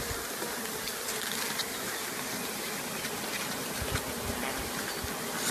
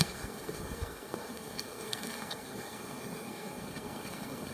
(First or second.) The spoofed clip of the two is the second